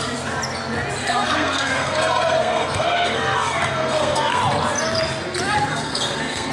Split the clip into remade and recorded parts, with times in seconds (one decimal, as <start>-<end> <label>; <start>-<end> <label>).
0.0-1.0 recorded; 1.0-4.4 remade; 4.4-5.7 recorded; 5.7-6.5 remade